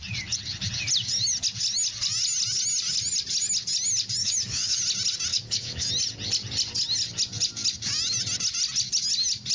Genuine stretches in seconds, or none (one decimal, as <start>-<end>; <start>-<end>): 0.0-4.2; 4.8-5.3; 5.9-9.5